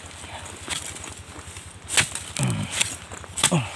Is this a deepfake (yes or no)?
no